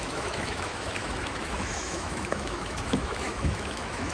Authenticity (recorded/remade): remade